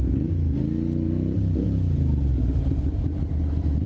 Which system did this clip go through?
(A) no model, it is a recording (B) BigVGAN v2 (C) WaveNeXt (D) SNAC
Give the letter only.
A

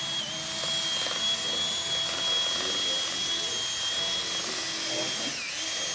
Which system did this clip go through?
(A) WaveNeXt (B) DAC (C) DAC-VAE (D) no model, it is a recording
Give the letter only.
D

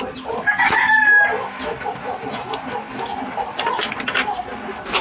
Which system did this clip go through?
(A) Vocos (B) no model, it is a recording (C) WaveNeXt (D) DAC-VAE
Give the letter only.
B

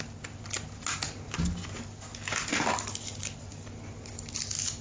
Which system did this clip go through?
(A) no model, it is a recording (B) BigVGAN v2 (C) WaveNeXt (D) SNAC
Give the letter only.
A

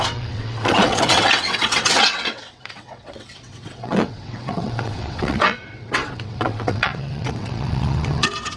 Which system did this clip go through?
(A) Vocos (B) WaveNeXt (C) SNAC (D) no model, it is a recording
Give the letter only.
B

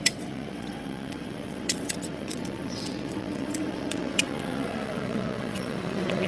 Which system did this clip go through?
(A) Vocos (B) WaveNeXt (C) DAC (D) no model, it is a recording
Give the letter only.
B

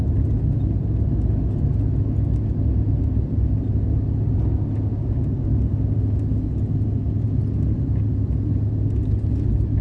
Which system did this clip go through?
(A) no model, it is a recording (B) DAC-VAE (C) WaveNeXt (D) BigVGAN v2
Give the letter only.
A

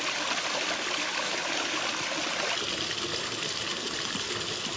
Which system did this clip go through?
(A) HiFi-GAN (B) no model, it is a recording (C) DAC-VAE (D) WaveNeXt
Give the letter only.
B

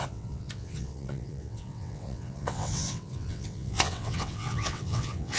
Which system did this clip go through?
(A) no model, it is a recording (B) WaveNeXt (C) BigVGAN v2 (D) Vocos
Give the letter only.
B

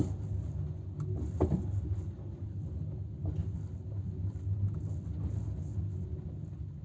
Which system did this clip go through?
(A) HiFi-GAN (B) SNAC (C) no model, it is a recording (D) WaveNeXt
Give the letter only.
C